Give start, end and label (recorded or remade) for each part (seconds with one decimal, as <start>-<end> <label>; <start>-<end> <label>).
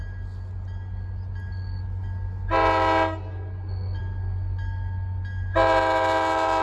0.0-6.6 recorded